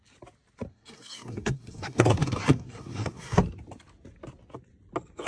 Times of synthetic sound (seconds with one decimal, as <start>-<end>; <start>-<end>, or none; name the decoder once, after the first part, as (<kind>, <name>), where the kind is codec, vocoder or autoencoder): 0.7-3.4 (codec, SNAC)